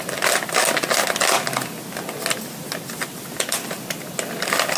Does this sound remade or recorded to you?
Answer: recorded